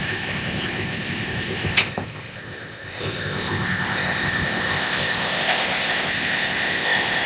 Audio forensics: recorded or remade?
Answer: remade